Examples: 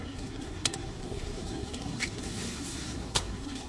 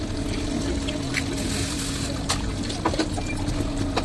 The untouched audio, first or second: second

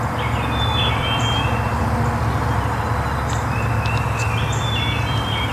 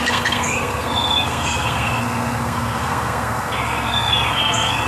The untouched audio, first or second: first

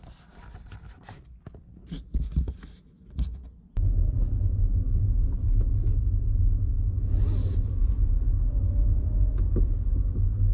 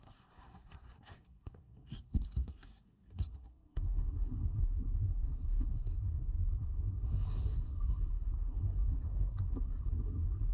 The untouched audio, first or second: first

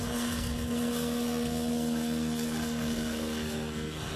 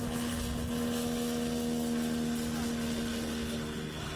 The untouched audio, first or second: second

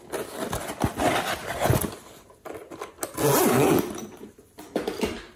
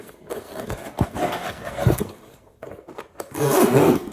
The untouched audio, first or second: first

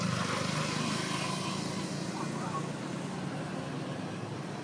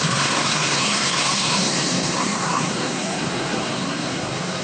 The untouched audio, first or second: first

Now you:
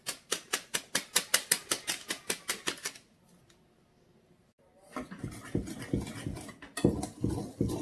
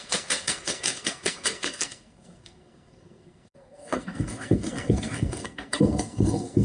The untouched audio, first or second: first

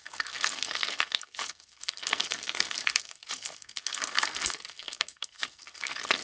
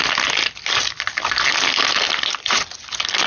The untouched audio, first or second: second